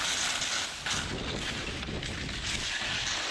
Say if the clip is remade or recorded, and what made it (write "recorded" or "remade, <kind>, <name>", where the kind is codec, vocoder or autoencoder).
recorded